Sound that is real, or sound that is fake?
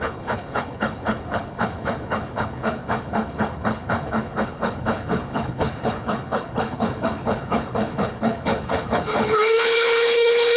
fake